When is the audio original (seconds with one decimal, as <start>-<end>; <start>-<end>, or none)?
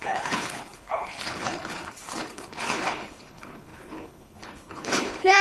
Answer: none